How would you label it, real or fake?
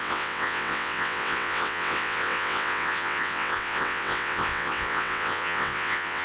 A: fake